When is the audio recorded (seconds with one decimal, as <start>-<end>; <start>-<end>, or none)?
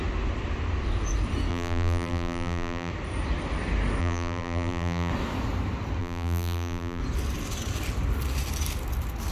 0.0-1.5; 2.9-4.0; 5.1-6.0; 7.0-9.3